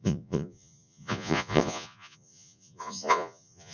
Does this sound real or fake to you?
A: fake